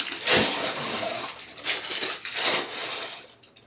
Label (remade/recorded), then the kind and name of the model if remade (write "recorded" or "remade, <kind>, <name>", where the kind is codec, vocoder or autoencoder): recorded